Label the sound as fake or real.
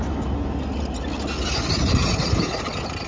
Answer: real